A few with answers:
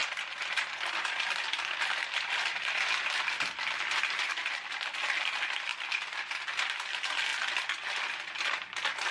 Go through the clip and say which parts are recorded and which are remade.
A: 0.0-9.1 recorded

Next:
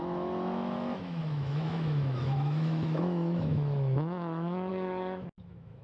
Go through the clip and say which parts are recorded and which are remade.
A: 0.0-5.8 remade

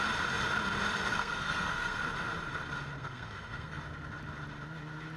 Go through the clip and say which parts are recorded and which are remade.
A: 0.0-1.1 recorded; 1.1-2.0 remade; 2.0-3.0 recorded; 3.0-3.8 remade; 3.8-5.2 recorded

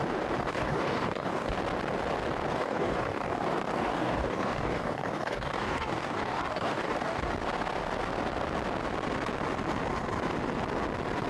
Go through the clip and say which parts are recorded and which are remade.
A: 0.0-0.5 recorded; 0.5-1.6 remade; 1.6-2.5 recorded; 2.5-7.3 remade; 7.3-11.3 recorded

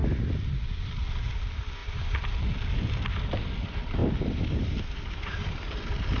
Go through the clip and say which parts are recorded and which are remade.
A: 0.0-6.2 recorded

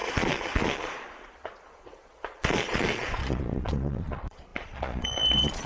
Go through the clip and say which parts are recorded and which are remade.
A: 0.0-5.7 remade

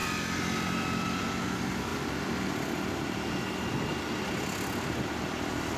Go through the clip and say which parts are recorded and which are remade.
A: 0.0-5.8 recorded

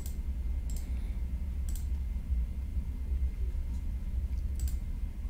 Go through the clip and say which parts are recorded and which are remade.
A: 0.0-5.3 recorded